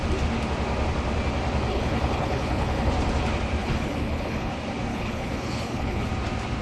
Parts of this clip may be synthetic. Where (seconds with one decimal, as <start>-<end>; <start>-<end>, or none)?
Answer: 1.7-2.9; 3.6-4.5; 4.9-6.1